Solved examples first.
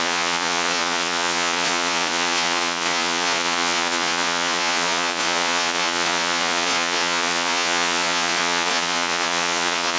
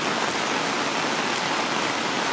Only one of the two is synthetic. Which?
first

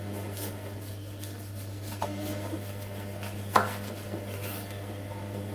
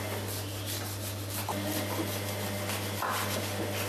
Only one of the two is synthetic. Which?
first